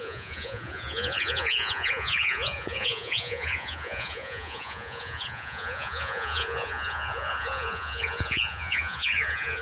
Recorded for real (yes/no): no